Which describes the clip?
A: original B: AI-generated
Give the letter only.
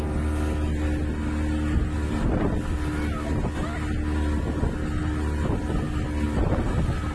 A